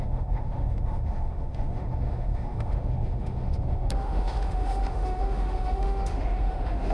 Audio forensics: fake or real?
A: fake